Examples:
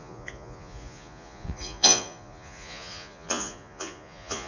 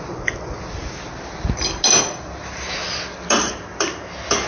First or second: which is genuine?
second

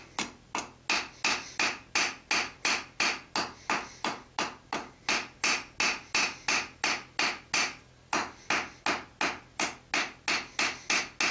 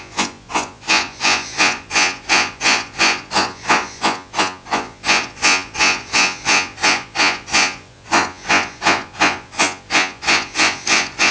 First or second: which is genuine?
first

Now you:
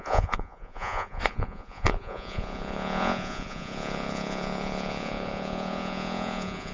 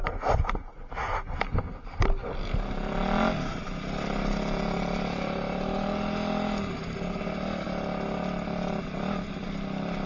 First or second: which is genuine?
second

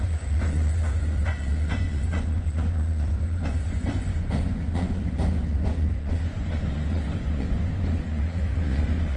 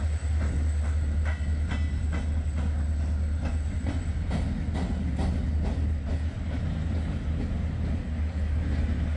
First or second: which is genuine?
second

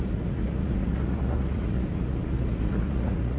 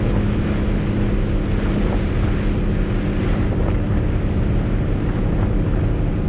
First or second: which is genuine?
second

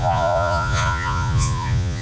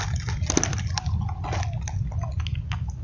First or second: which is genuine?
second